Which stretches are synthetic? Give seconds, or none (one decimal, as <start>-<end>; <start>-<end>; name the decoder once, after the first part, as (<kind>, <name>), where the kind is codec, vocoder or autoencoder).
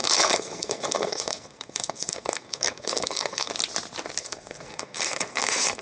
0.0-3.5 (codec, SNAC); 4.2-5.8